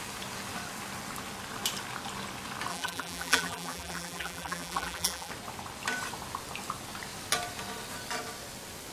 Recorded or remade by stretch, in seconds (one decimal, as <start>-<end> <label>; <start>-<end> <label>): 0.0-2.7 recorded; 2.7-5.3 remade; 5.3-8.9 recorded